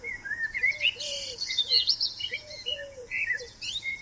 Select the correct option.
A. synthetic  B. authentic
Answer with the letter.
A